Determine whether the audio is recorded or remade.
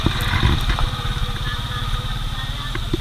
recorded